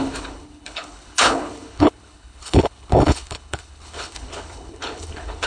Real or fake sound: fake